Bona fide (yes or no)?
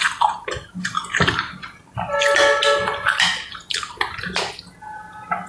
yes